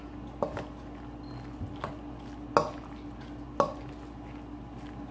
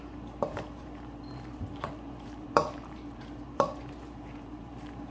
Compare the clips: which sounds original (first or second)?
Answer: first